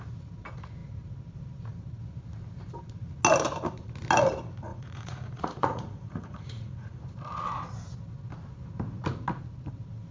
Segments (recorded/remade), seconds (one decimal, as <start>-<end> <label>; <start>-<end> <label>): 0.0-4.7 recorded; 4.7-7.0 remade; 7.0-10.1 recorded